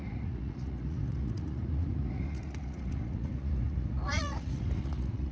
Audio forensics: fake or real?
fake